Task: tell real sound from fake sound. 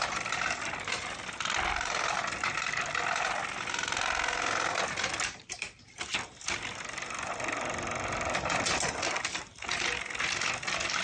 real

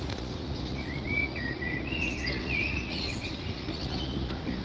fake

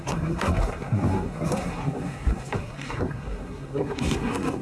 fake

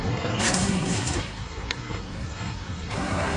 fake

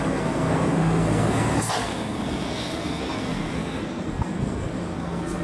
fake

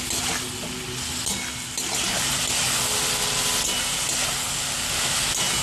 real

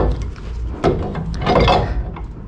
real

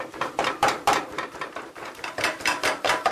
fake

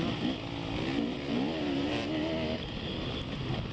real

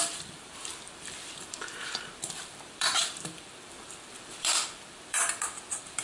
fake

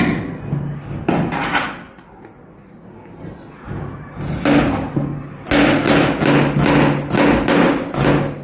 real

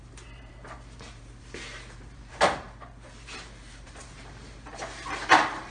fake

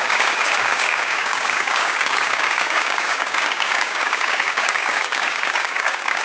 fake